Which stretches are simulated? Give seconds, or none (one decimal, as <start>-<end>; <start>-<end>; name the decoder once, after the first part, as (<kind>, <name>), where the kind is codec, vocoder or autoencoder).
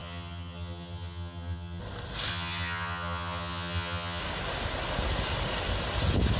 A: 0.0-1.8 (vocoder, HiFi-GAN); 2.3-4.2